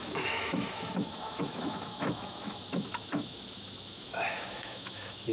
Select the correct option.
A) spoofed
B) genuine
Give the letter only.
A